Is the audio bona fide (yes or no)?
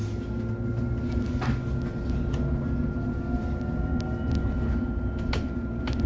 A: yes